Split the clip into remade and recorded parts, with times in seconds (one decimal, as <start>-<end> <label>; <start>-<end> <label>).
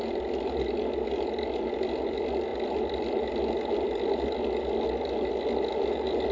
0.0-6.3 recorded